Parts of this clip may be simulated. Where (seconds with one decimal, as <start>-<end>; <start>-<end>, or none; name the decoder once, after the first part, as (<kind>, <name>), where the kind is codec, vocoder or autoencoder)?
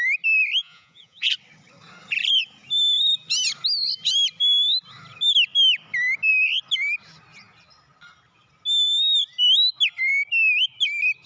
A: 0.6-1.3 (vocoder, Vocos)